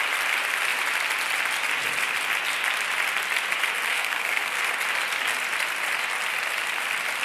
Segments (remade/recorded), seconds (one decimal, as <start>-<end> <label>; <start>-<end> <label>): 0.0-3.9 recorded; 3.9-4.7 remade; 4.7-7.2 recorded